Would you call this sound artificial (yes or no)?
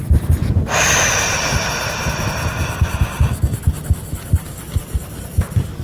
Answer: no